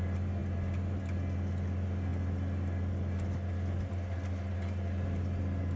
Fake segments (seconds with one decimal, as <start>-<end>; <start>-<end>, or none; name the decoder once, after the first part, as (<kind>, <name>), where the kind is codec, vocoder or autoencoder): none